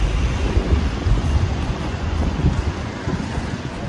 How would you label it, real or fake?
fake